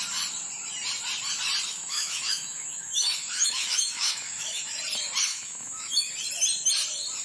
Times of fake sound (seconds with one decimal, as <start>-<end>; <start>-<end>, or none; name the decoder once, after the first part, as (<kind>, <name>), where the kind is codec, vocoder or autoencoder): 1.7-4.8 (autoencoder, DAC-VAE); 5.3-6.1